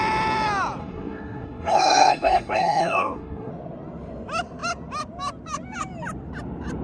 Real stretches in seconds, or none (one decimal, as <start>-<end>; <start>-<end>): 0.0-0.8; 3.5-6.8